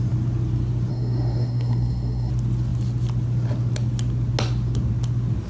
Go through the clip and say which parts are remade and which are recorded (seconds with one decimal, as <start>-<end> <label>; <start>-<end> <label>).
0.0-0.9 recorded; 0.9-2.3 remade; 2.3-5.5 recorded